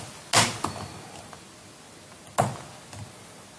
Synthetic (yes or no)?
no